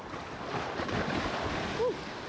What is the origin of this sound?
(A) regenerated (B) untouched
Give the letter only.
B